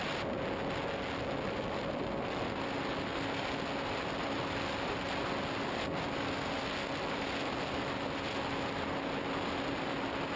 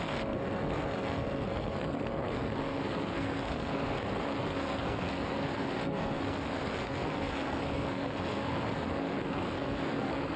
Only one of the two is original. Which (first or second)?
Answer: first